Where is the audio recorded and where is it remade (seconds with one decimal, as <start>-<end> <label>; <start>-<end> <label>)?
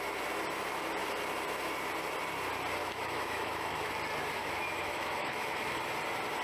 0.0-2.8 recorded; 2.8-3.9 remade; 3.9-4.4 recorded; 4.4-5.8 remade; 5.8-6.4 recorded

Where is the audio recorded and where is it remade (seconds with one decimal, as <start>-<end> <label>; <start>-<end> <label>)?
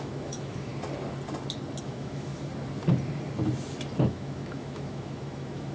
0.0-0.7 remade; 0.7-1.8 recorded; 1.8-2.5 remade; 2.5-4.0 recorded; 4.0-5.7 remade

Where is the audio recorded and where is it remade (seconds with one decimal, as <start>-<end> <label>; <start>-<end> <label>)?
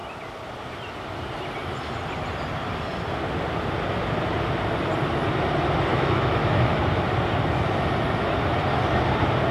0.0-5.9 recorded; 5.9-6.8 remade; 6.8-9.5 recorded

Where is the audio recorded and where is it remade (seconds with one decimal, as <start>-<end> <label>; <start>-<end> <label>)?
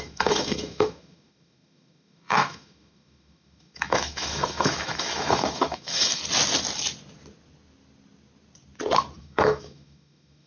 0.0-6.2 remade; 6.2-9.2 recorded; 9.2-10.5 remade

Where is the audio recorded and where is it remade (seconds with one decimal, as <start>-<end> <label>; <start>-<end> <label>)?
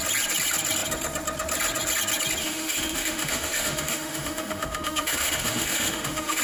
0.0-2.4 recorded; 2.4-6.4 remade